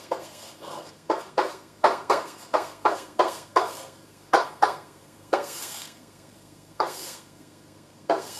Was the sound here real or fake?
fake